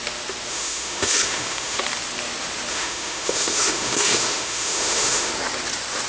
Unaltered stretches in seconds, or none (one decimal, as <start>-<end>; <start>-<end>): 0.0-0.5; 1.8-2.7; 5.3-6.1